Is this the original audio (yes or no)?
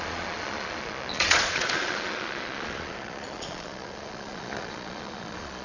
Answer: no